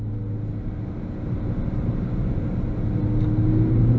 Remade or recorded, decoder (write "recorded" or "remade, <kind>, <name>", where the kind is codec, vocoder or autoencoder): recorded